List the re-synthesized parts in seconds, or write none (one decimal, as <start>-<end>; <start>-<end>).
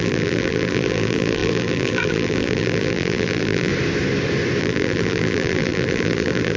0.0-3.7; 4.6-6.6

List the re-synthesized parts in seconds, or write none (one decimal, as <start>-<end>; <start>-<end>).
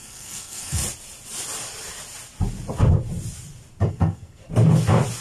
0.0-0.8; 3.9-4.4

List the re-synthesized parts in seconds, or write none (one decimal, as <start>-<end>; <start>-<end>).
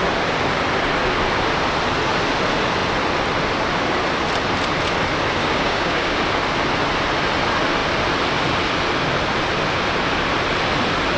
5.4-6.2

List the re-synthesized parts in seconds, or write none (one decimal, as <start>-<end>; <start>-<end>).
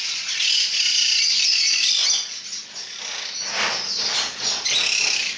none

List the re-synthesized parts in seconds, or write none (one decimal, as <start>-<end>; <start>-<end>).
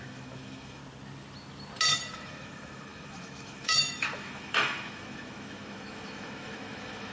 0.0-0.8; 2.1-7.1